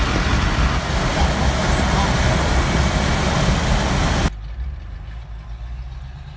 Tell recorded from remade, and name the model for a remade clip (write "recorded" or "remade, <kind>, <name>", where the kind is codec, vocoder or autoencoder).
recorded